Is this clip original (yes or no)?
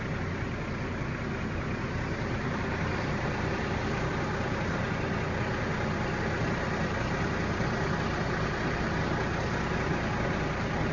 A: yes